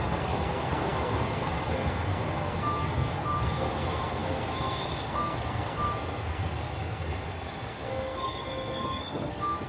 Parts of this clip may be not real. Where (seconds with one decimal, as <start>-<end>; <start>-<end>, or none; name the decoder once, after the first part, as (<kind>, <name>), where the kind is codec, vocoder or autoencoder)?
0.0-9.7 (codec, SNAC)